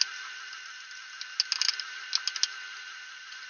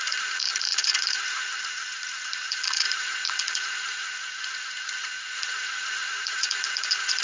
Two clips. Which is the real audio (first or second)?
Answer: first